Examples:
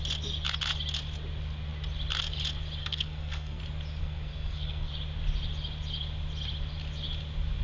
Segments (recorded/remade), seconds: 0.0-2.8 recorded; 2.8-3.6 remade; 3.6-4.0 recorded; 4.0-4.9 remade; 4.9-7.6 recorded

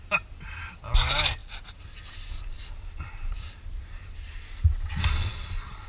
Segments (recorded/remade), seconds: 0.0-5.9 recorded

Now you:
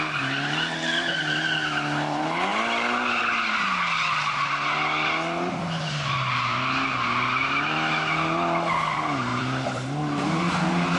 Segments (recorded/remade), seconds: 0.0-9.3 recorded; 9.3-10.4 remade; 10.4-11.0 recorded

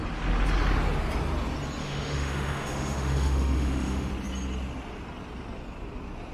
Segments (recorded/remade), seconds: 0.0-1.8 recorded; 1.8-4.1 remade; 4.1-6.3 recorded

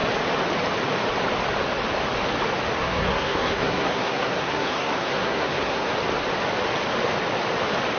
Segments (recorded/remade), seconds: 0.0-2.8 recorded; 2.8-5.9 remade; 5.9-8.0 recorded

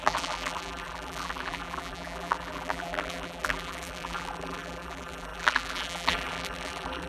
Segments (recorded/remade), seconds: 0.0-7.1 remade

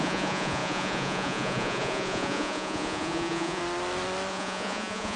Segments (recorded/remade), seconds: 0.0-3.6 remade; 3.6-4.3 recorded; 4.3-5.2 remade

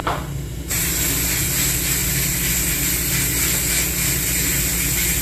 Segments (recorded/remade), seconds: 0.0-0.9 remade; 0.9-5.2 recorded